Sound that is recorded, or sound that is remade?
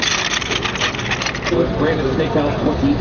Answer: recorded